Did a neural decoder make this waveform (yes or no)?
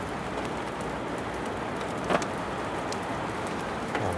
no